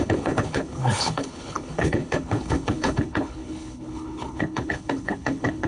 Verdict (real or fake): fake